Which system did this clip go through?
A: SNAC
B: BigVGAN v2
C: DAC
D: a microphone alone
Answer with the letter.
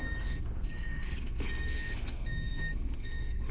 A